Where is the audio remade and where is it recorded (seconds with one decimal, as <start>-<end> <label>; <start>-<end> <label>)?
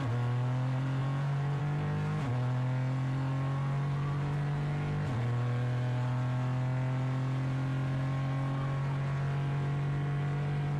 0.0-1.0 recorded; 1.0-1.6 remade; 1.6-10.8 recorded